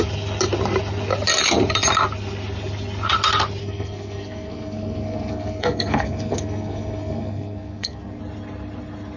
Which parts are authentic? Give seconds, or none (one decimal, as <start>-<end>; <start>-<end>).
0.0-3.6; 8.2-9.2